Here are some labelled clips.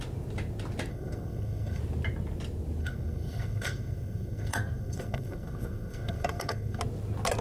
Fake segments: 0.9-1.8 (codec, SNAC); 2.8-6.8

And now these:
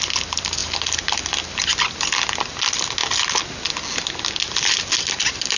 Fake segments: none

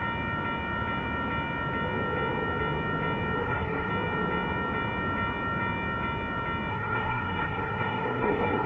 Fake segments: 3.4-3.9 (codec, SNAC); 6.7-8.7

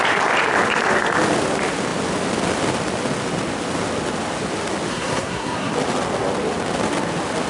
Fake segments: 4.9-5.7 (codec, SNAC)